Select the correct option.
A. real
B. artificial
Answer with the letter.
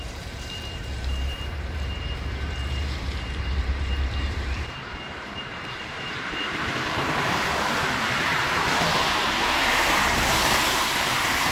B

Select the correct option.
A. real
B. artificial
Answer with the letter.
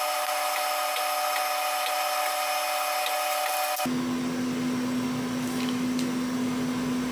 A